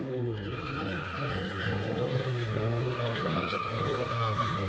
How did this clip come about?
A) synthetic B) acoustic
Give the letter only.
A